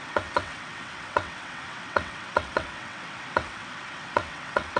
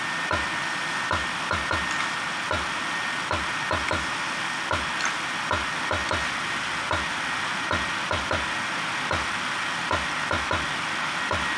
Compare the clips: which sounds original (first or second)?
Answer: second